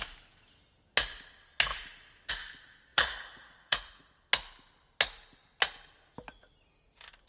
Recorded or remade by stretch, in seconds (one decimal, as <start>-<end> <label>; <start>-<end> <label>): 0.0-2.9 recorded; 2.9-4.1 remade; 4.1-7.3 recorded